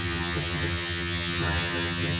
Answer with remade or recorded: remade